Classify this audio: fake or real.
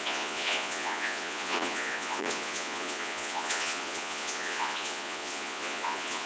fake